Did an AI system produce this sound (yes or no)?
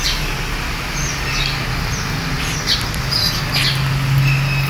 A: no